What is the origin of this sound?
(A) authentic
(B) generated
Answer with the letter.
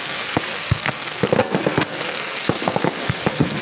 B